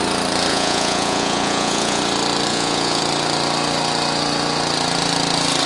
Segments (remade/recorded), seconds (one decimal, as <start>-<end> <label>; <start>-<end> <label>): 0.0-0.5 recorded; 0.5-2.0 remade; 2.0-2.5 recorded; 2.5-3.0 remade; 3.0-5.7 recorded